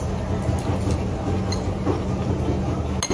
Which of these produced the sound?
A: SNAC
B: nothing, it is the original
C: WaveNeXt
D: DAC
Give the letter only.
B